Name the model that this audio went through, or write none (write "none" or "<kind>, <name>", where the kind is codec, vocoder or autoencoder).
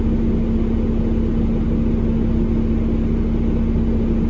none